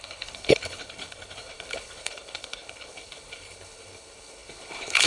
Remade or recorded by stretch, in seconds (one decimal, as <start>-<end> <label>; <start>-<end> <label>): 0.0-5.1 remade